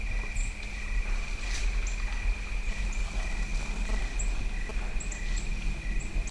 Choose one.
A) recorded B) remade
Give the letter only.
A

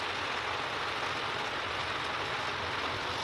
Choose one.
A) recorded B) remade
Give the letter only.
A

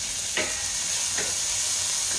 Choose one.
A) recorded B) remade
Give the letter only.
A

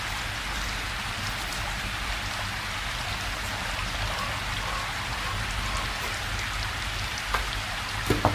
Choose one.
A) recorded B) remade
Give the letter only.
A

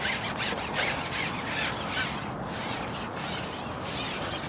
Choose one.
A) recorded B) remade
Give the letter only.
A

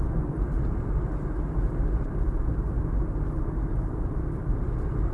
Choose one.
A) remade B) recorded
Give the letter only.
B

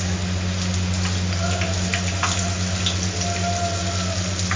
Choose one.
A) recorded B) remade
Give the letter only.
A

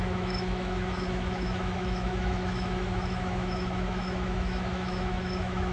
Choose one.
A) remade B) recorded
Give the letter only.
A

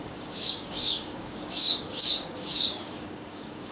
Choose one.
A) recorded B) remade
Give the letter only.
B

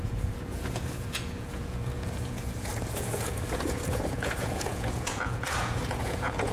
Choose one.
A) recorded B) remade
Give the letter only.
B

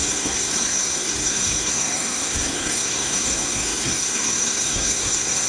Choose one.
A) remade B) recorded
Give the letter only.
A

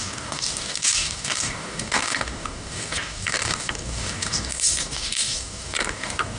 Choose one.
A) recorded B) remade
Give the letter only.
B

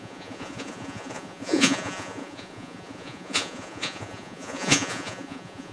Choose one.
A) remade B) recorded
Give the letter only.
A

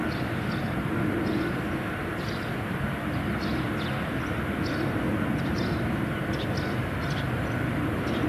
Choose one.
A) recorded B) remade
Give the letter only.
A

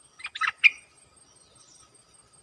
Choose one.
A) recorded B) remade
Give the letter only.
A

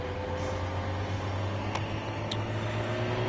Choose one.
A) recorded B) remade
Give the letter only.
A